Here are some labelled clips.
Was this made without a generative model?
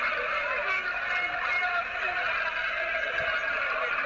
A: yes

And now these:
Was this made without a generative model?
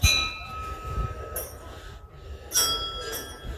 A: yes